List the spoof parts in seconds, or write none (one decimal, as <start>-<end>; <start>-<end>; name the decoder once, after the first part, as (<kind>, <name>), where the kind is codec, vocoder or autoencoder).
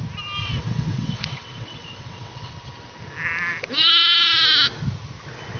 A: 0.4-2.5 (vocoder, WaveNeXt)